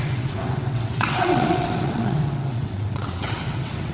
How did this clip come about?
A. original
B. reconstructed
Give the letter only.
B